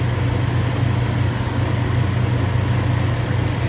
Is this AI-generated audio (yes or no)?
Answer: no